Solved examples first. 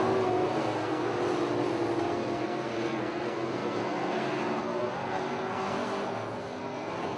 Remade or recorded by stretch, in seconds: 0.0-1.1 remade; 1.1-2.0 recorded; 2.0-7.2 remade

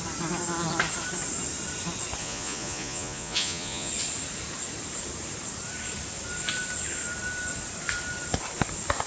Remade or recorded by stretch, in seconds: 0.0-2.2 recorded; 2.2-3.9 remade; 3.9-9.1 recorded

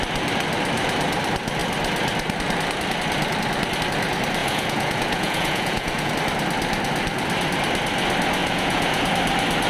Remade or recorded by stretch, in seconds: 0.0-4.4 recorded; 4.4-6.1 remade; 6.1-8.4 recorded; 8.4-9.1 remade; 9.1-9.7 recorded

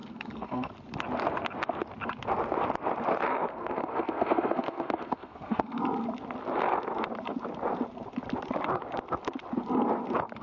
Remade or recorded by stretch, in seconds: 0.0-0.7 remade; 0.7-3.5 recorded; 3.5-5.8 remade; 5.8-10.4 recorded

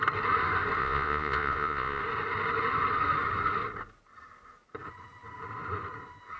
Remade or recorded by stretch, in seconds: 0.0-0.8 recorded; 0.8-2.0 remade; 2.0-6.4 recorded